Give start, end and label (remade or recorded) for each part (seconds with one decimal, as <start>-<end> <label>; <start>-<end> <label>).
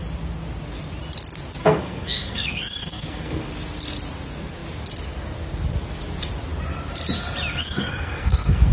0.0-1.6 recorded; 1.6-3.5 remade; 3.5-7.6 recorded; 7.6-8.7 remade